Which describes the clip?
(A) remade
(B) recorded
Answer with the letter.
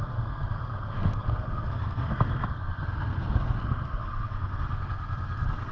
A